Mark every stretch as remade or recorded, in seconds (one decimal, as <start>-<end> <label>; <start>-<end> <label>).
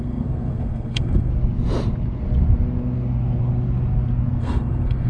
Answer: 0.0-1.3 remade; 1.3-4.4 recorded; 4.4-5.1 remade